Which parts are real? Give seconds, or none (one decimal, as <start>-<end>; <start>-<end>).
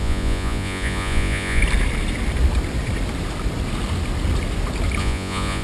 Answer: 1.6-5.0